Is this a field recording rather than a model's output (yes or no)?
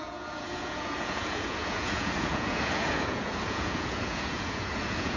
no